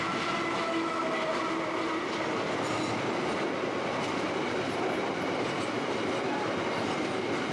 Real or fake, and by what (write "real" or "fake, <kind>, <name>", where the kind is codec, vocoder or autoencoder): real